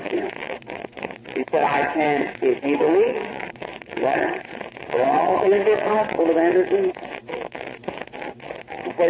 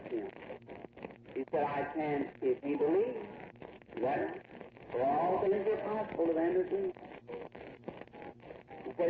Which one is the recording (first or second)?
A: second